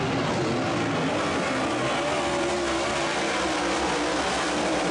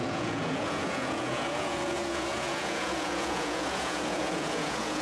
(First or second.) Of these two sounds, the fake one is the second